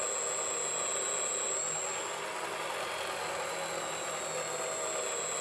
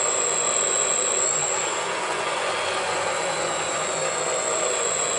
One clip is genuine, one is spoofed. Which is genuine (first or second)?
first